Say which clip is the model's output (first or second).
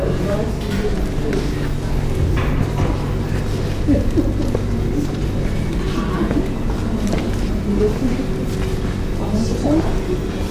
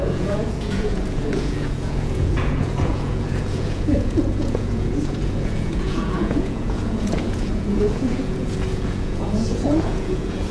second